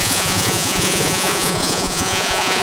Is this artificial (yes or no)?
yes